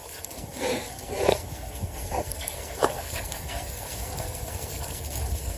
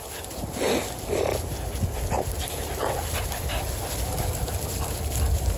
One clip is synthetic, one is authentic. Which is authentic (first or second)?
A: second